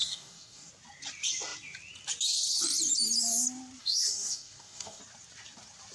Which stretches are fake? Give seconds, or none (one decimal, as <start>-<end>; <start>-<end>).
0.0-0.7; 3.8-5.0